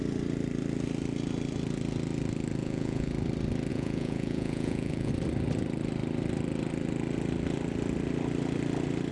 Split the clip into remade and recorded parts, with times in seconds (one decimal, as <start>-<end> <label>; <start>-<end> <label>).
0.0-2.6 recorded; 2.6-3.1 remade; 3.1-3.7 recorded; 3.7-5.1 remade; 5.1-9.1 recorded

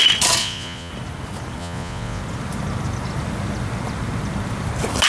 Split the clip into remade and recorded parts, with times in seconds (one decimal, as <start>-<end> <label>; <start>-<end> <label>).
0.0-0.4 recorded; 0.4-0.9 remade; 0.9-1.6 recorded; 1.6-2.2 remade; 2.2-5.1 recorded

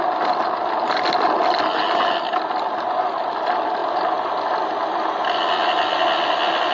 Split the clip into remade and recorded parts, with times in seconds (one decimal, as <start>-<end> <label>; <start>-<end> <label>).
0.0-6.7 recorded

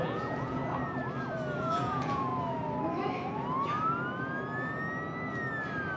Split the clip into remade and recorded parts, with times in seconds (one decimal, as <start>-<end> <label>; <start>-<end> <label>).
0.0-0.6 remade; 0.6-1.6 recorded; 1.6-2.3 remade; 2.3-6.0 recorded

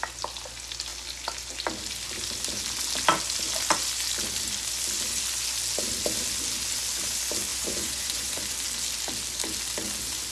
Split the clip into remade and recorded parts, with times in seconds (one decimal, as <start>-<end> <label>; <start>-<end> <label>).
0.0-7.5 recorded; 7.5-8.4 remade; 8.4-10.3 recorded

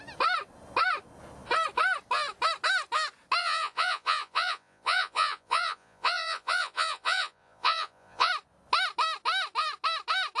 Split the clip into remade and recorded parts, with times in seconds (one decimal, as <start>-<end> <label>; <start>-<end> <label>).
0.0-3.4 recorded; 3.4-8.3 remade; 8.3-10.4 recorded

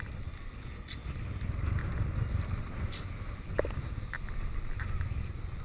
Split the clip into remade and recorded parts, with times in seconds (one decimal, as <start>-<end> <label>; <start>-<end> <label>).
0.0-5.6 recorded